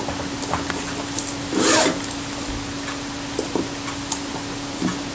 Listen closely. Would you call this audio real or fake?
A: real